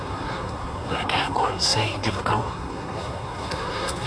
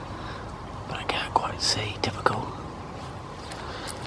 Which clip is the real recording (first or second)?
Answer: second